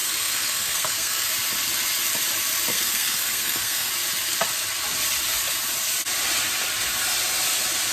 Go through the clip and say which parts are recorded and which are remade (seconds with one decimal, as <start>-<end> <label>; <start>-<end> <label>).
0.0-1.3 remade; 1.3-2.7 recorded; 2.7-3.9 remade; 3.9-7.9 recorded

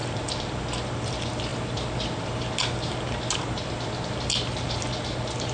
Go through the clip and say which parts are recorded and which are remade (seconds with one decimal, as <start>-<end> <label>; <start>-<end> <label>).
0.0-1.1 remade; 1.1-1.5 recorded; 1.5-4.8 remade; 4.8-5.5 recorded

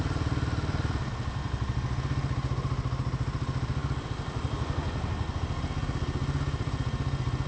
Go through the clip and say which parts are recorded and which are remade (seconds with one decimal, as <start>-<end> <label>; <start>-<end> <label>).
0.0-7.5 recorded

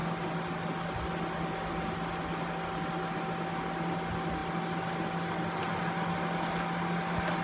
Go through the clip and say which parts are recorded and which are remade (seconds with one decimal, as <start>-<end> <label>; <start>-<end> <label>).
0.0-7.4 recorded

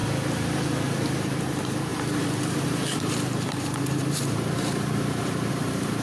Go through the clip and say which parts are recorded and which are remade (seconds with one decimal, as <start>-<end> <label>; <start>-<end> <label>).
0.0-1.4 recorded; 1.4-6.0 remade